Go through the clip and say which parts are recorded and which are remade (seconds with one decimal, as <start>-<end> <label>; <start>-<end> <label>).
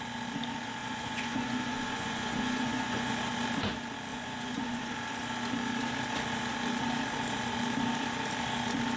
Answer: 0.0-0.8 recorded; 0.8-3.1 remade; 3.1-4.1 recorded; 4.1-4.9 remade; 4.9-9.0 recorded